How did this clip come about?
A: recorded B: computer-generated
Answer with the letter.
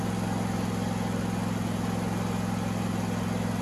A